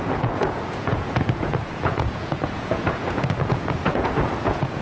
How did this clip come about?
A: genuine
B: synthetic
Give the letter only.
B